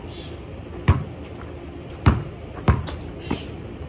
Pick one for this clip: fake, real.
fake